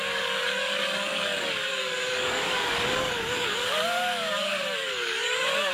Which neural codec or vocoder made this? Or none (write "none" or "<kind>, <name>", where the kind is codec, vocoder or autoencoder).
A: codec, DAC